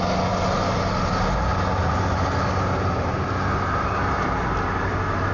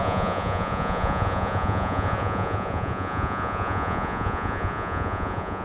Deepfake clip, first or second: second